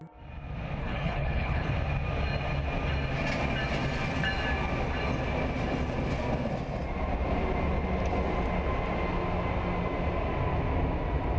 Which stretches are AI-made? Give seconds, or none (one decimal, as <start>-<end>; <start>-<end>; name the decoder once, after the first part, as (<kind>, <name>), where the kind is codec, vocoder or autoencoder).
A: 0.8-1.7 (codec, HILCodec)